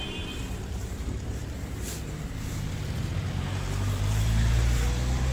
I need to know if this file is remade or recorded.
remade